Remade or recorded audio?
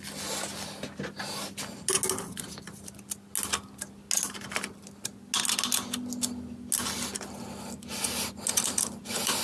recorded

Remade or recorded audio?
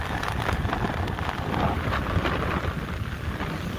recorded